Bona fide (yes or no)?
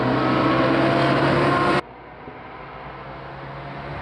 yes